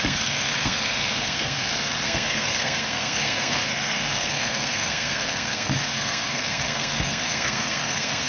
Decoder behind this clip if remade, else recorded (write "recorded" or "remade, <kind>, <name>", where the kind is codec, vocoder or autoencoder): remade, codec, SNAC